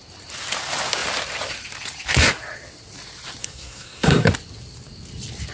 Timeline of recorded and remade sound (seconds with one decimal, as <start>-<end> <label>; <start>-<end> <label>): 0.0-3.4 recorded; 3.4-4.3 remade; 4.3-5.5 recorded